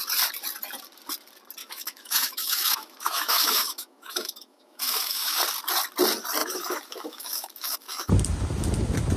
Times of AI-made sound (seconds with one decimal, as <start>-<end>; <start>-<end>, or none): 1.6-5.4; 6.4-8.1